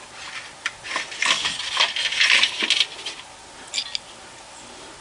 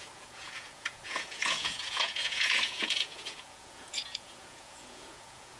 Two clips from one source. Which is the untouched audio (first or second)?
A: first